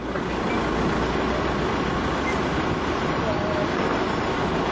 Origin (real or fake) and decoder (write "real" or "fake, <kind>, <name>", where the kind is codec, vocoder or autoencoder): real